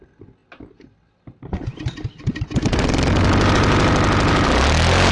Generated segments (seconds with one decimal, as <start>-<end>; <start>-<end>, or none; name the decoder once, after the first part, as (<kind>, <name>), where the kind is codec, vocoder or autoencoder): none